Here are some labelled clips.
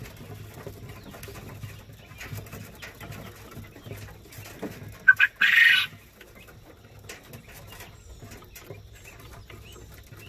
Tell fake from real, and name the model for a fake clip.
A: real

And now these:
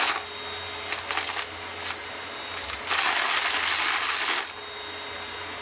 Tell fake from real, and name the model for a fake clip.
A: real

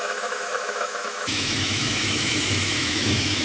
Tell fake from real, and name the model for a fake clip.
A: fake, autoencoder, DAC-VAE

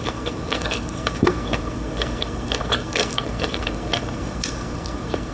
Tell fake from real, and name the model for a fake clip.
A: fake, codec, SNAC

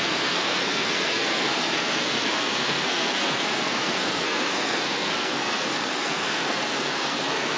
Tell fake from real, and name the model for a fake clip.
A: fake, codec, SNAC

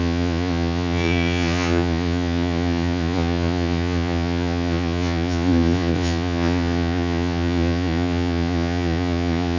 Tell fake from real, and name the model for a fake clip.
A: fake, vocoder, Vocos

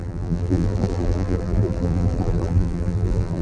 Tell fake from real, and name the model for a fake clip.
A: fake, vocoder, BigVGAN v2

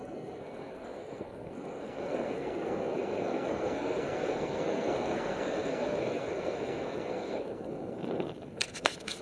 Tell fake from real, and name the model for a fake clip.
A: fake, codec, SNAC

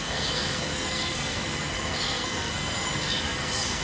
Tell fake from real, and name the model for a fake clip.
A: fake, codec, SNAC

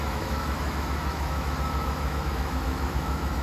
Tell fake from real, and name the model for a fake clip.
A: fake, autoencoder, DAC-VAE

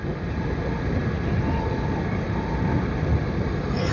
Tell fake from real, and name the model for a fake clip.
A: real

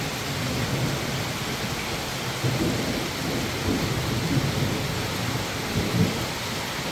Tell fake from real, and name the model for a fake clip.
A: real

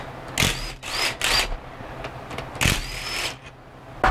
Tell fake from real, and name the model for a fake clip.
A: real